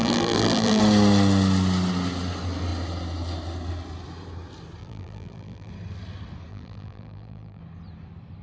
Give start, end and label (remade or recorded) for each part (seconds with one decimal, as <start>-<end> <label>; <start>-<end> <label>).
0.0-0.8 remade; 0.8-4.8 recorded; 4.8-5.7 remade; 5.7-6.5 recorded; 6.5-7.6 remade; 7.6-8.4 recorded